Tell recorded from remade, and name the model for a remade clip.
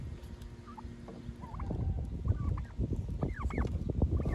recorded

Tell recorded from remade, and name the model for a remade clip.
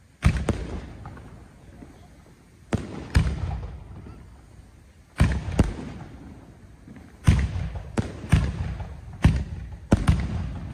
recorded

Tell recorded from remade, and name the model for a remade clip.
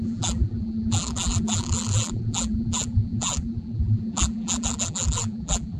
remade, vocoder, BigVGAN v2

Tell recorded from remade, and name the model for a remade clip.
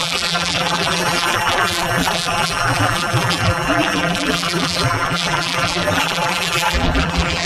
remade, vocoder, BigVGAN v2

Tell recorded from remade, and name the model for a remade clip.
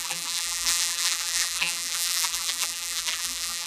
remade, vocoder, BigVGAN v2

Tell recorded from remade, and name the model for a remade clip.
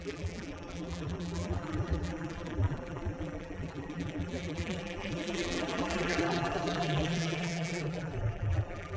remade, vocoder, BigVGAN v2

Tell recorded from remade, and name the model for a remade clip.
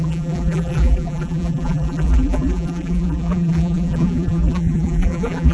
remade, vocoder, BigVGAN v2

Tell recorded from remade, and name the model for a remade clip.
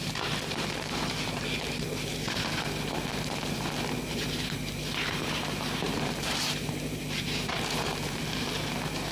remade, vocoder, BigVGAN v2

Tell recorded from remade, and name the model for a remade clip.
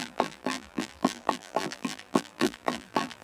remade, vocoder, BigVGAN v2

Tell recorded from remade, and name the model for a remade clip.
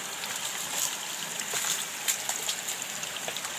recorded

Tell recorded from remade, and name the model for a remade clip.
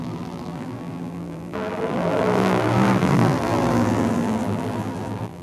remade, vocoder, BigVGAN v2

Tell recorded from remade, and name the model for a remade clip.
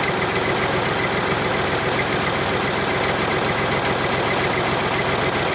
recorded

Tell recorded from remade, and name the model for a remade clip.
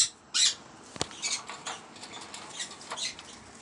recorded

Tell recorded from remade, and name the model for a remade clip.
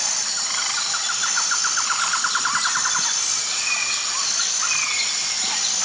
remade, vocoder, BigVGAN v2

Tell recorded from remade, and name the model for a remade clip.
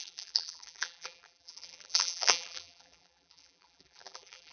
remade, vocoder, BigVGAN v2